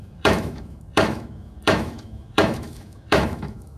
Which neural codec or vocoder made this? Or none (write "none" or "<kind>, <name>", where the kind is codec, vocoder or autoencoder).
autoencoder, DAC-VAE